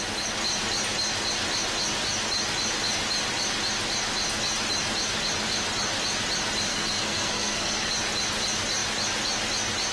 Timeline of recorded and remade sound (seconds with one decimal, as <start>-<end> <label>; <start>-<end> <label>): 0.0-6.7 recorded; 6.7-7.9 remade; 7.9-9.9 recorded